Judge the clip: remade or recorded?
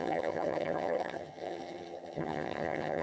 remade